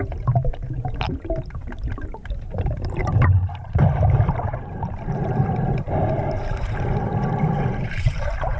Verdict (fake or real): fake